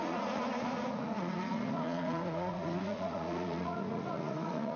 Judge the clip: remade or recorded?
remade